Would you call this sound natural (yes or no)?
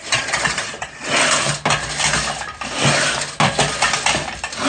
yes